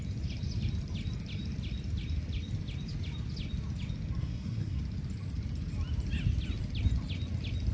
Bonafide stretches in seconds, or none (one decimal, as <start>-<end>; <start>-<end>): 0.0-4.2; 4.8-7.7